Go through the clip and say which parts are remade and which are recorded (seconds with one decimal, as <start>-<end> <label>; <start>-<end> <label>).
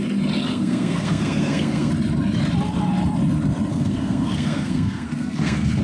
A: 0.0-0.5 recorded; 0.5-1.9 remade; 1.9-3.7 recorded; 3.7-5.8 remade